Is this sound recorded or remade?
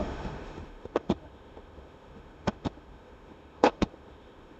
remade